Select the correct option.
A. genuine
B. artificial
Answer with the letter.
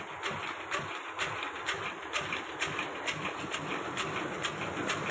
A